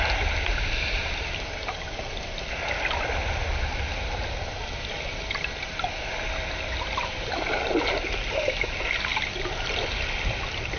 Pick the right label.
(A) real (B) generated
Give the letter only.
A